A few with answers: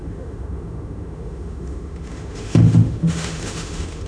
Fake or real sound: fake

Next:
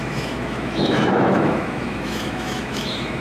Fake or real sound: fake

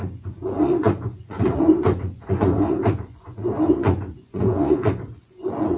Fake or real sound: fake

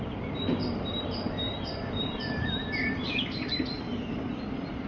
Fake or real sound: fake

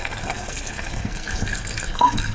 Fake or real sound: fake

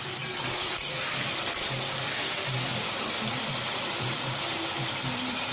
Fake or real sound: fake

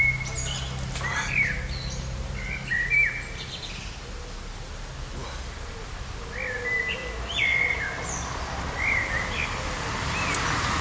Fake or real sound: real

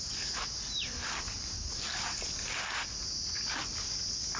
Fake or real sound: real